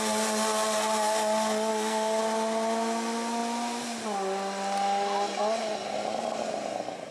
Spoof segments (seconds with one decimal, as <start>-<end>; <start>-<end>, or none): 1.7-2.2

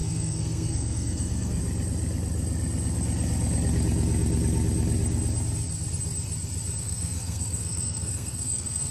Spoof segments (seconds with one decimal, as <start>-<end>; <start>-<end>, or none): 0.0-1.6; 6.8-8.9

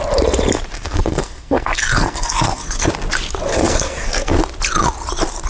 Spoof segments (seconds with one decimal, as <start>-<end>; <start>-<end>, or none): 0.7-2.9; 3.5-4.4